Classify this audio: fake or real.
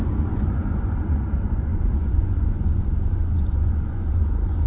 fake